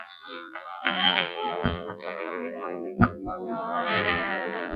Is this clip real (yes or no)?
no